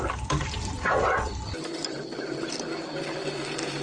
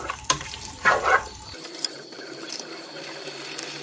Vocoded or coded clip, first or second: second